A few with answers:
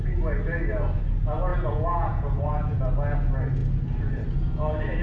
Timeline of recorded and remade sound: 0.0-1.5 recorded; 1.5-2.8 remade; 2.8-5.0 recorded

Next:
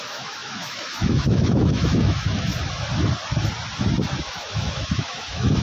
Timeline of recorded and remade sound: 0.0-2.5 remade; 2.5-4.2 recorded; 4.2-5.6 remade

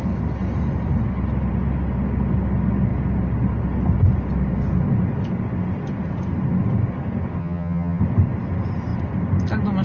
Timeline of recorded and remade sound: 0.0-7.4 recorded; 7.4-8.0 remade; 8.0-9.8 recorded

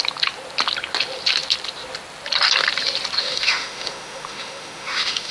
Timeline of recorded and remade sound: 0.0-3.2 recorded; 3.2-5.3 remade

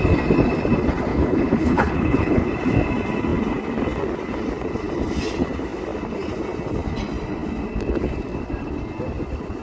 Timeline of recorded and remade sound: 0.0-1.1 recorded; 1.1-2.5 remade; 2.5-9.6 recorded

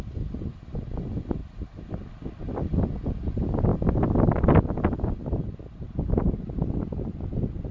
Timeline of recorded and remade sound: 0.0-7.7 recorded

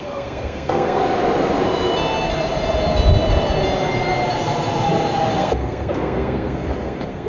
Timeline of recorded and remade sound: 0.0-1.0 remade; 1.0-5.4 recorded; 5.4-7.3 remade

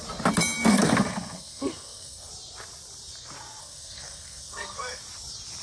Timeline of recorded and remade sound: 0.0-0.7 recorded; 0.7-2.3 remade; 2.3-3.6 recorded; 3.6-5.0 remade; 5.0-5.6 recorded